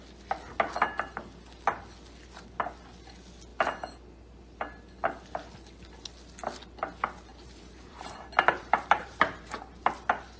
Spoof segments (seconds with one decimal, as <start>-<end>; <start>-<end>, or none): 7.3-9.8